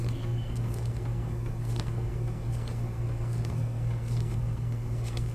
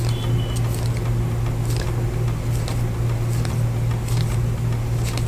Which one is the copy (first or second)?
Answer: first